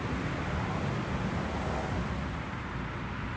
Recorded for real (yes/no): yes